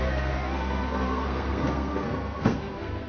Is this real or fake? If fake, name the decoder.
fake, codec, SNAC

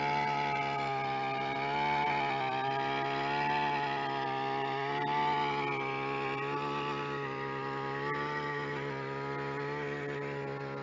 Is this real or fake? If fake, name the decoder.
real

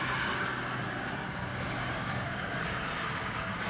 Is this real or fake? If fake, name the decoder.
fake, codec, DAC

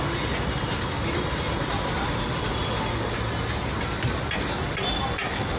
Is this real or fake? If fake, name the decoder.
real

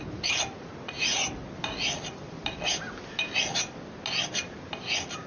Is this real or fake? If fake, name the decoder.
real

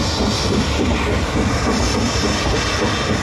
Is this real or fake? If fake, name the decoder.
real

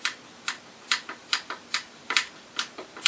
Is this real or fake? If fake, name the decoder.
fake, vocoder, BigVGAN v2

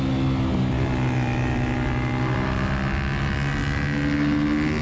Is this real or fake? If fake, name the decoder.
real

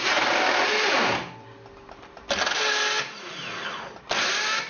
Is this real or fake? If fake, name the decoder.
real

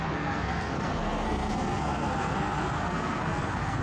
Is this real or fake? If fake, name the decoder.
fake, codec, SNAC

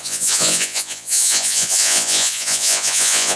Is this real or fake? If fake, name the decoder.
fake, vocoder, Vocos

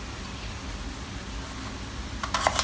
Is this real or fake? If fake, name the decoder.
real